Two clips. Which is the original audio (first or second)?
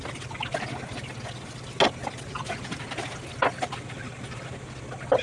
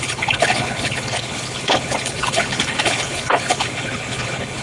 first